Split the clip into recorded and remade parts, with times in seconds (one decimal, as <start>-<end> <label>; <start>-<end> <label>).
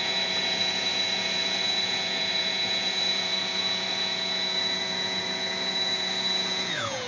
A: 0.0-7.1 remade